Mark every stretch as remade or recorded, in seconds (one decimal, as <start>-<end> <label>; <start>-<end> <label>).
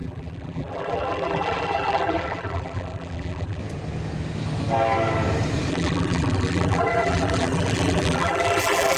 0.0-3.6 remade; 3.6-5.7 recorded; 5.7-9.0 remade